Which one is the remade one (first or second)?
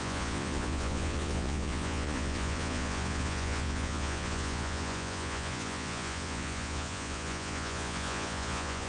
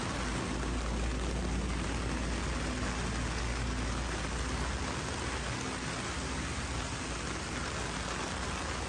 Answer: first